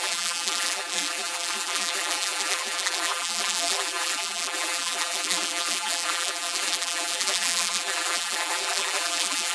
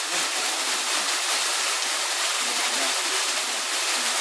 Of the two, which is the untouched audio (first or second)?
second